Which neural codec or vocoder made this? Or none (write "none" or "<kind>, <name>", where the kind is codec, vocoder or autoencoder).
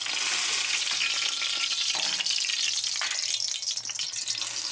none